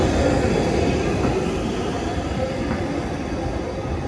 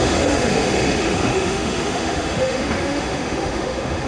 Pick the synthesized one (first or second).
second